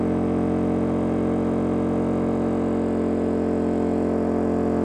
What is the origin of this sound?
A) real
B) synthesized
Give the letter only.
A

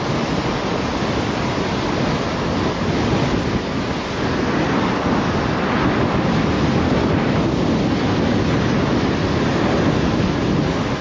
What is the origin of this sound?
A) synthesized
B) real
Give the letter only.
B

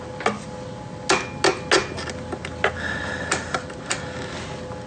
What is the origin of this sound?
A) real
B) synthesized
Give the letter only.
A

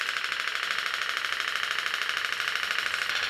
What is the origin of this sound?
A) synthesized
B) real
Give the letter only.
A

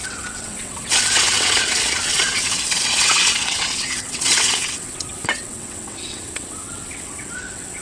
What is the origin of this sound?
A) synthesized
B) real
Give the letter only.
A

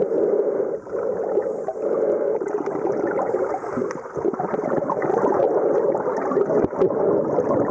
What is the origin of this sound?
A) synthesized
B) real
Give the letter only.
B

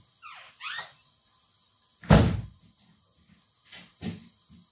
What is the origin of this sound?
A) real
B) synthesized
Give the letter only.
A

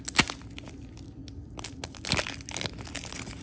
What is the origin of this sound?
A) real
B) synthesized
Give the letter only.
A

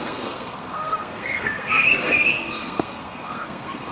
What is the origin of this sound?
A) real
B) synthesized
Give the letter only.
B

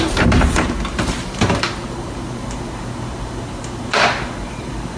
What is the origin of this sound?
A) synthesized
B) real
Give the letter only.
A